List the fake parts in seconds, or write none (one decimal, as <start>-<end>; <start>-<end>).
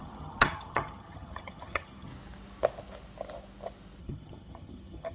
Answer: 0.0-2.1; 4.0-5.1